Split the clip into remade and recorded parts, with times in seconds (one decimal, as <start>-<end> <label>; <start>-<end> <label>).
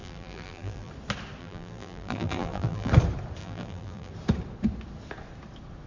0.0-0.9 remade; 0.9-1.4 recorded; 1.4-2.9 remade; 2.9-3.4 recorded; 3.4-4.1 remade; 4.1-5.9 recorded